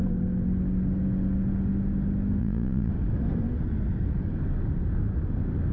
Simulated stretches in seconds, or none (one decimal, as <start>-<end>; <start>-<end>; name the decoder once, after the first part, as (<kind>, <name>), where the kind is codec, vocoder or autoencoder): 2.4-2.9 (vocoder, Vocos)